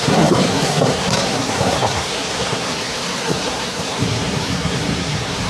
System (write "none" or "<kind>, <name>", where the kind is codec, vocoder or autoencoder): codec, SNAC